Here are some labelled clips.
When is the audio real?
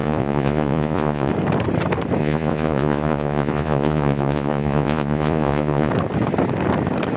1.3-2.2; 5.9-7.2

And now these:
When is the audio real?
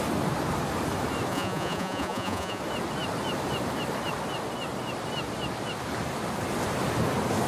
0.0-1.3; 2.6-7.5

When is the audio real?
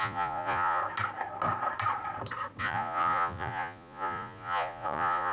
0.8-2.6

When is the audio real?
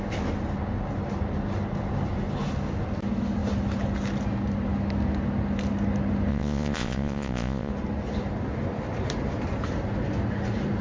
0.0-6.3; 7.7-10.8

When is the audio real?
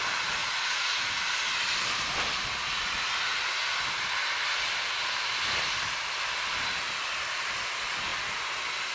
0.0-0.4; 1.2-8.9